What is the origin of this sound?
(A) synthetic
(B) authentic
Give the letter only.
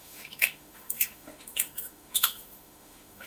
A